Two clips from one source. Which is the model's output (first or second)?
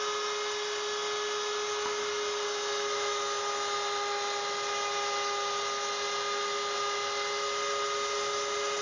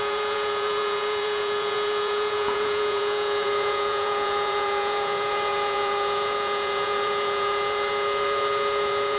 second